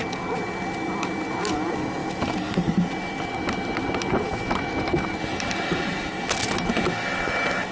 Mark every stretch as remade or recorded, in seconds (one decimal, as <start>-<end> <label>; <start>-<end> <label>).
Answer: 0.0-7.7 recorded